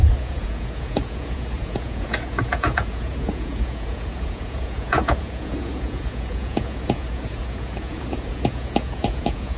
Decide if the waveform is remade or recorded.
remade